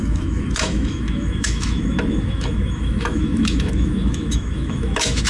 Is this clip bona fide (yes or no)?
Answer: no